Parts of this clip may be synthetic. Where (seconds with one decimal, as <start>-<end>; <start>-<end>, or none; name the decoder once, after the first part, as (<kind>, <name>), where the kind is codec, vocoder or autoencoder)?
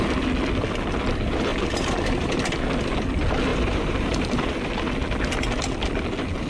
1.5-2.6 (vocoder, BigVGAN v2); 3.5-4.4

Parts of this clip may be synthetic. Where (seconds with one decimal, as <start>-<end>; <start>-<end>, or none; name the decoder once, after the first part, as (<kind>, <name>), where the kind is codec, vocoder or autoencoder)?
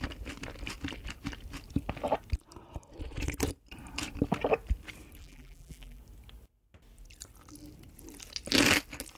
5.2-6.0 (vocoder, BigVGAN v2)